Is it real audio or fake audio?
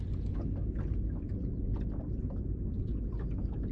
real